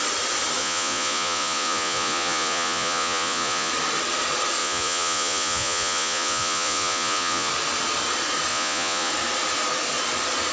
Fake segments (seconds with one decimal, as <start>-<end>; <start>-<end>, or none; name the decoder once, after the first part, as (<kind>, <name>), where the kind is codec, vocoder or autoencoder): 0.6-3.7 (vocoder, Vocos); 4.6-7.5; 8.5-9.1